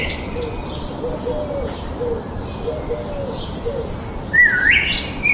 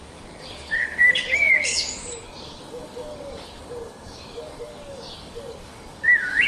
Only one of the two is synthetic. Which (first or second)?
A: second